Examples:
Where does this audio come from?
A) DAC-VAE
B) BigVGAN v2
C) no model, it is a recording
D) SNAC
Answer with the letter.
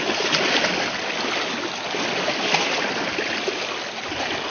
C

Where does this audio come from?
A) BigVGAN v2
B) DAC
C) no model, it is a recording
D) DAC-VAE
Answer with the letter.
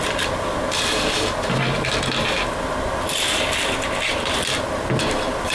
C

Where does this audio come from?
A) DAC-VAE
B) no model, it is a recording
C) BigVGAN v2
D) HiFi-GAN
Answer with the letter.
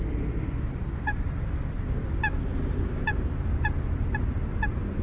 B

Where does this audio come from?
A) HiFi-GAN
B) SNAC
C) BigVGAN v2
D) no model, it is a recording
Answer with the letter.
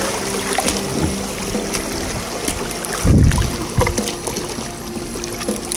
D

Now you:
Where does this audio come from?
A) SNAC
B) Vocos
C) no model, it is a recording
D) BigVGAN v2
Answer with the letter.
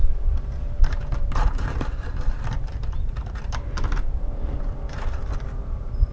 D